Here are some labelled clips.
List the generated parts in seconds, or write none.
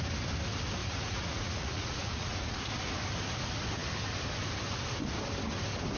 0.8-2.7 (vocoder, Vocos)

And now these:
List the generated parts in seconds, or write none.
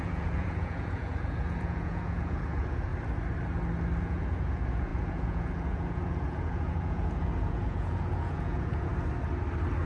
0.0-2.9 (vocoder, Vocos); 4.0-8.9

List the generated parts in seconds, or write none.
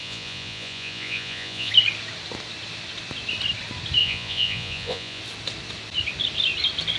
0.0-1.7 (vocoder, Vocos); 4.0-5.2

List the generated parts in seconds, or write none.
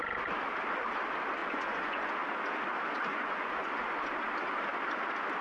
1.4-2.1 (vocoder, Vocos); 3.1-3.7